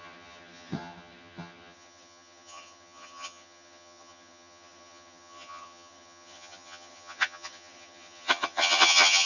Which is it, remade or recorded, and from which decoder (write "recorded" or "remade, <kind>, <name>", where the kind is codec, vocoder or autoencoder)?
remade, vocoder, HiFi-GAN